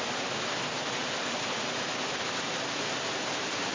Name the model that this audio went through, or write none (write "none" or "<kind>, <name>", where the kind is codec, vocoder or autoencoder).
none